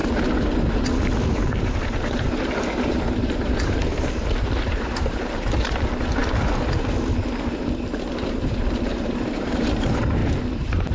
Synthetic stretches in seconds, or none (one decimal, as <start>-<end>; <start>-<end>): 1.3-6.2; 8.1-10.2

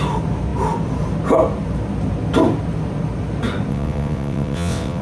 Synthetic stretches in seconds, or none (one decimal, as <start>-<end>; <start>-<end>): 3.7-5.0

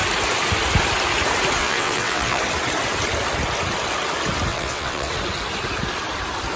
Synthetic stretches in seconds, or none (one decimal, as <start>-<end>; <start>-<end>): 1.6-2.4; 4.5-5.1